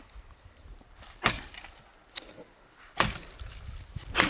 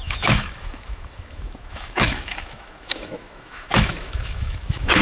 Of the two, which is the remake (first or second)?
second